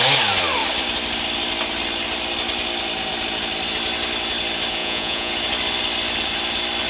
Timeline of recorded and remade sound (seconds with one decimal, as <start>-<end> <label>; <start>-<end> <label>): 0.0-4.8 recorded; 4.8-5.3 remade; 5.3-6.9 recorded